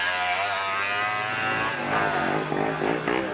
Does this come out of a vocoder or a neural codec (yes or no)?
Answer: no